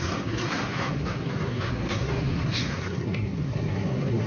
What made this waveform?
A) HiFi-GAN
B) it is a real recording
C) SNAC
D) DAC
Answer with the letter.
C